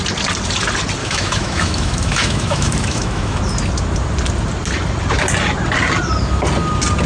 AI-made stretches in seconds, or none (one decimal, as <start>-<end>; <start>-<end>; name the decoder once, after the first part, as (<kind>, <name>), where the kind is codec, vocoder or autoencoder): 1.0-3.4 (autoencoder, DAC-VAE)